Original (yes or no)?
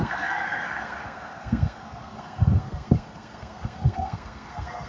no